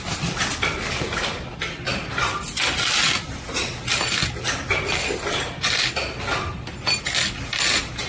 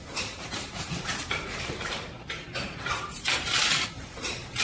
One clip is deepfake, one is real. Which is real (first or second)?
first